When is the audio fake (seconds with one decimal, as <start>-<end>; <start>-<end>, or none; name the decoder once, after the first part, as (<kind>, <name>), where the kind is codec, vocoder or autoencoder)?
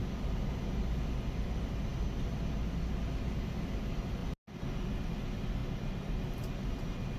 5.6-6.2 (vocoder, BigVGAN v2)